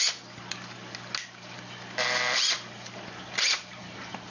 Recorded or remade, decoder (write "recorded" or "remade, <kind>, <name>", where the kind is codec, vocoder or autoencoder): recorded